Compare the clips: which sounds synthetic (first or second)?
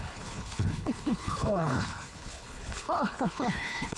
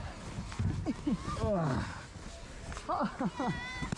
first